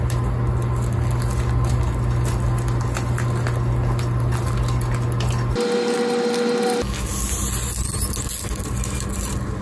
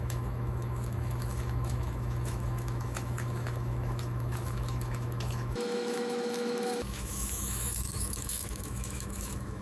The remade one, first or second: second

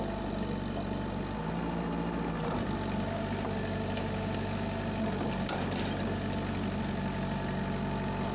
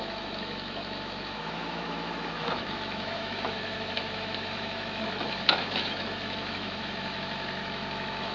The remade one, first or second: second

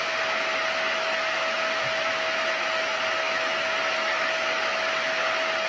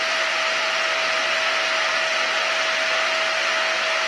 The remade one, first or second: first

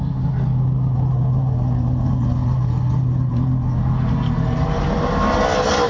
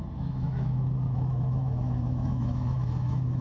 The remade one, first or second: second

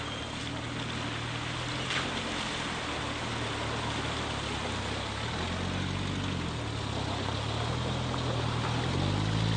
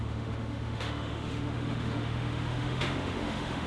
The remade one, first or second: second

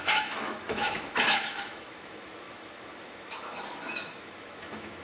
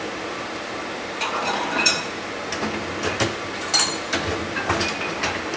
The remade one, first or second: first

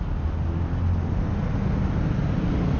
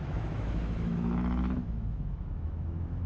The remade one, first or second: second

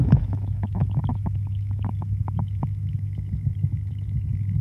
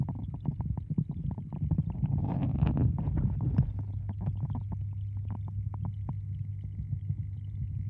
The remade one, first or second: first